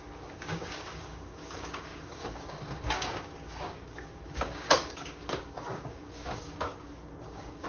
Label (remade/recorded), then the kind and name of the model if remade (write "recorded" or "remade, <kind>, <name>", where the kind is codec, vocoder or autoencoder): remade, codec, DAC